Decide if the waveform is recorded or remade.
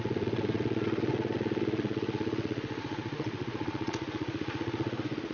remade